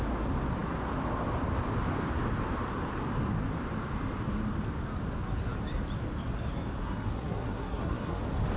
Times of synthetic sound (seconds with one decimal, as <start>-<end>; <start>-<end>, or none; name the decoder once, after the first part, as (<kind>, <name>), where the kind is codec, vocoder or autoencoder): 6.8-8.2 (codec, SNAC)